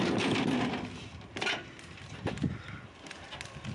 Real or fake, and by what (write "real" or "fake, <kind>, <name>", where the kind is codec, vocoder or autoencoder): real